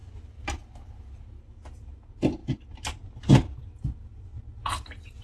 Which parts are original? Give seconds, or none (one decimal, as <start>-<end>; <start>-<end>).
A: 0.0-5.2